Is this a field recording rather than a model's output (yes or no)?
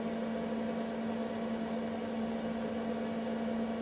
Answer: yes